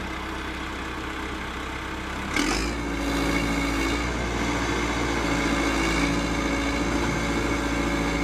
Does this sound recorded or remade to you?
recorded